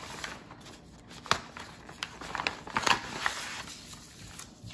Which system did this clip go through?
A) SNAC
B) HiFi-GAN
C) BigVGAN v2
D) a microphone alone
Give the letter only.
D